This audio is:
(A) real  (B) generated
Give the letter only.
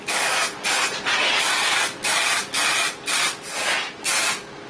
A